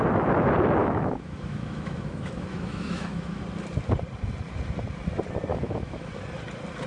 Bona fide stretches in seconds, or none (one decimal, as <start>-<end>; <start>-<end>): 0.0-0.8; 3.4-5.5; 6.1-6.9